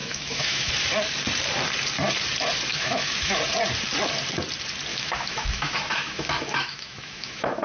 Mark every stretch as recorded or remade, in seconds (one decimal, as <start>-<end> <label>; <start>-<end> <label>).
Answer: 0.0-0.7 remade; 0.7-2.7 recorded; 2.7-3.4 remade; 3.4-4.9 recorded; 4.9-7.6 remade